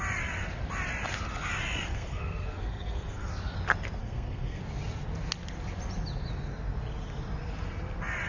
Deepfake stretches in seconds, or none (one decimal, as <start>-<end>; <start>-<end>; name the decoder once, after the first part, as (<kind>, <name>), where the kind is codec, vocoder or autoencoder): 1.9-3.3 (codec, SNAC); 4.0-4.6